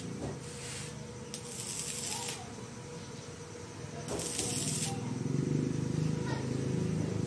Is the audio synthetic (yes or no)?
no